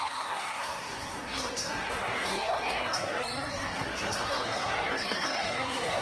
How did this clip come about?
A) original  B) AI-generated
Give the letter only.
B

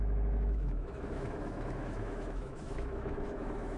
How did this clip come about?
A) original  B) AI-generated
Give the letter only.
B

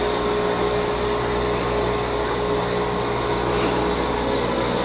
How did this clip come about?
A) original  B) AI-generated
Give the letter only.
A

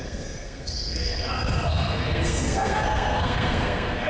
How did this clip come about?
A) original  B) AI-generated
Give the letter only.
B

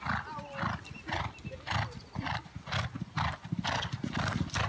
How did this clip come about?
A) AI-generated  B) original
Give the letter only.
B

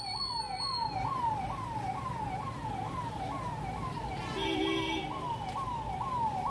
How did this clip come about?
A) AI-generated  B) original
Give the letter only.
B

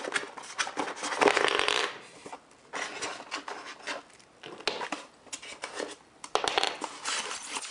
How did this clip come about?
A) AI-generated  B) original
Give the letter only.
B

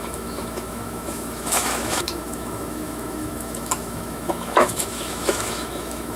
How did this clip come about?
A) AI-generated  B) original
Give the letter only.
A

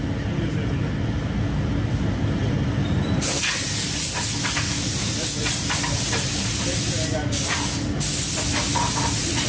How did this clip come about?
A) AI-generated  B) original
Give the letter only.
B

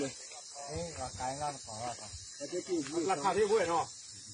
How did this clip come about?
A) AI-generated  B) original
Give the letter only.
B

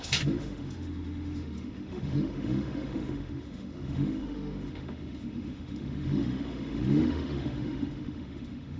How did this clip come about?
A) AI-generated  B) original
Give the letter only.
A